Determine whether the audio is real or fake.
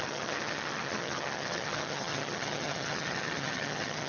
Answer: fake